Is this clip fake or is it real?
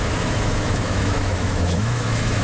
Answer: fake